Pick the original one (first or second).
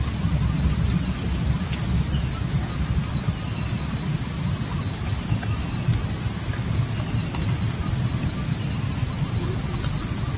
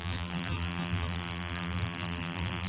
first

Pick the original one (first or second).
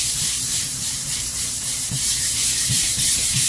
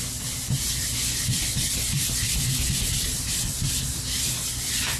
second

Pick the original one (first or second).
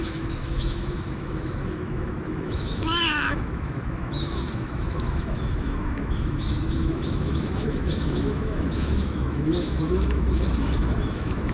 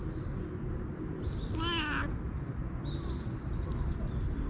second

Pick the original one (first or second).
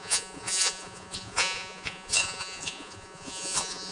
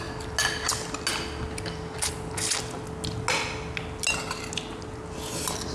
second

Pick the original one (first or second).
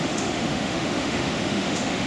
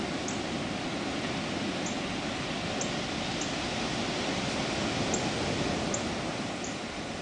second